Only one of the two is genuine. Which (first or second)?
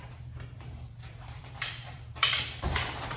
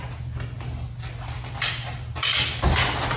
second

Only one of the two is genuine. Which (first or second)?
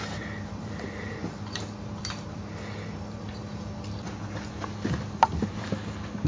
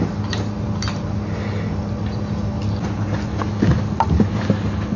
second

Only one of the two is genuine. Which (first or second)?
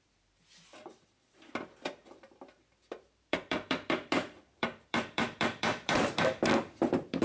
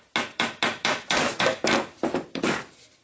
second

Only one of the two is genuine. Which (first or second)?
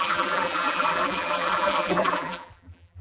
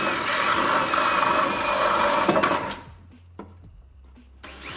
second